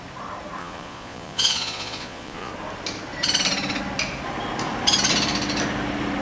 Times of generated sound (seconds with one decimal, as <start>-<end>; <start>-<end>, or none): 0.6-2.5